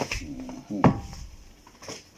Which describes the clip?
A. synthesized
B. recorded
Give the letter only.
B